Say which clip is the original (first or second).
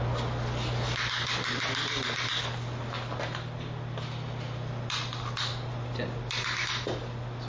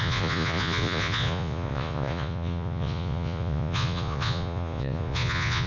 first